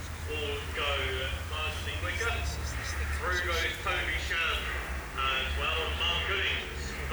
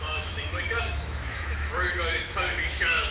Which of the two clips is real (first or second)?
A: first